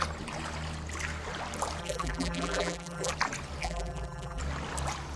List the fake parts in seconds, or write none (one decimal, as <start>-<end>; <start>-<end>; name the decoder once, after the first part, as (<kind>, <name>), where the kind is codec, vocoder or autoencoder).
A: 1.8-3.1 (vocoder, BigVGAN v2); 3.6-4.4